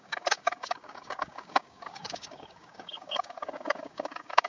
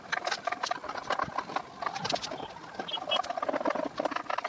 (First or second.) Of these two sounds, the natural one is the second